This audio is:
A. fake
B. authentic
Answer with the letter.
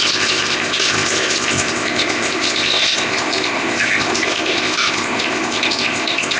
A